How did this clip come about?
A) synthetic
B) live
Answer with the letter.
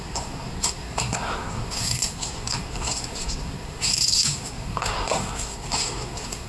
A